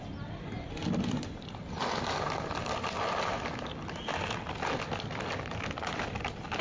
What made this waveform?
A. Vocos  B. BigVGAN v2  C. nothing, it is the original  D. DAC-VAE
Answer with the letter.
C